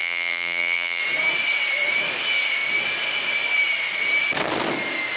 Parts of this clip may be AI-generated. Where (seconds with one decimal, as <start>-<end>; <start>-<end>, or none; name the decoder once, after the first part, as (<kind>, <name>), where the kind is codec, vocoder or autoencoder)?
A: 0.0-1.0 (vocoder, BigVGAN v2)